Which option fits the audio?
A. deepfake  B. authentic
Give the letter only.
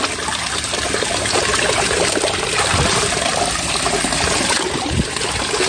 B